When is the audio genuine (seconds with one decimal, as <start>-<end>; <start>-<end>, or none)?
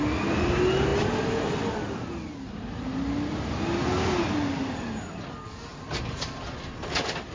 0.0-7.3